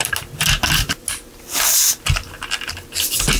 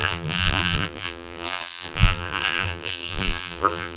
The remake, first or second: second